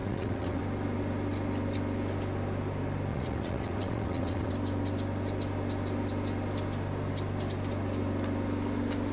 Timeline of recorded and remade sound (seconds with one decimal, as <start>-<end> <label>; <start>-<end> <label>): 0.0-0.6 remade; 0.6-3.1 recorded; 3.1-4.5 remade; 4.5-9.1 recorded

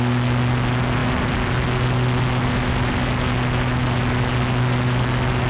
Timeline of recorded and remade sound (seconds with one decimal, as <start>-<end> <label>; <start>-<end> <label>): 0.0-5.5 recorded

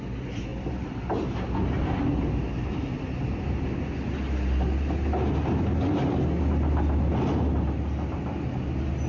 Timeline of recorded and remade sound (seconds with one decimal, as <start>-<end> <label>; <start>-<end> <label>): 0.0-9.1 recorded

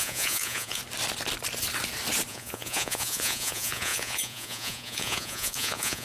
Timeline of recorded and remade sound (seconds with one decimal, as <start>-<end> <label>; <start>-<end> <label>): 0.0-0.8 remade; 0.8-2.3 recorded; 2.3-6.0 remade

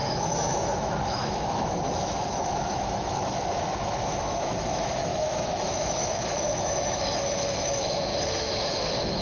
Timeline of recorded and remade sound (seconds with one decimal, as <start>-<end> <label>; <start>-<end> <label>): 0.0-9.2 remade

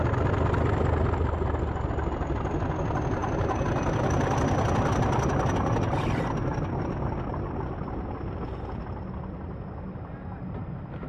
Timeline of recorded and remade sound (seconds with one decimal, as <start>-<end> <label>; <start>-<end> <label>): 0.0-3.2 recorded; 3.2-7.4 remade; 7.4-11.1 recorded

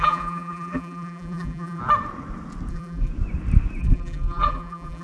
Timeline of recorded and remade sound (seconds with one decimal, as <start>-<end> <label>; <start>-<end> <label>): 0.0-1.8 remade; 1.8-2.7 recorded; 2.7-3.1 remade; 3.1-3.8 recorded; 3.8-5.0 remade